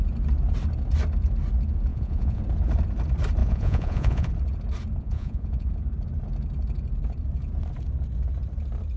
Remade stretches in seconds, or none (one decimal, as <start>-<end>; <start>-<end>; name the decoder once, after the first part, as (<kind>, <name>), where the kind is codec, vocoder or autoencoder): 1.9-2.4 (vocoder, Vocos); 3.4-4.3; 5.0-5.7